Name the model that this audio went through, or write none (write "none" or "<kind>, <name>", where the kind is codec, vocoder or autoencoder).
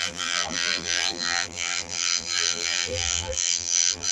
vocoder, BigVGAN v2